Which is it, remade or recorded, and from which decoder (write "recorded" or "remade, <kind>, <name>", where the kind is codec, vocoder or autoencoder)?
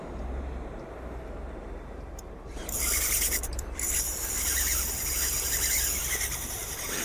remade, vocoder, BigVGAN v2